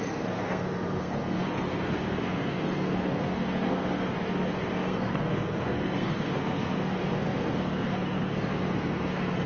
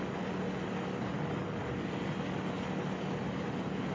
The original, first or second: second